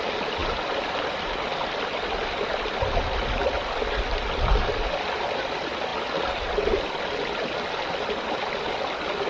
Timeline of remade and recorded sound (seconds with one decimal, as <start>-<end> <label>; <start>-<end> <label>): 0.0-9.3 recorded